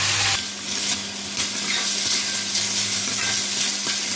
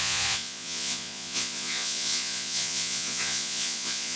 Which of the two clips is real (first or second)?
first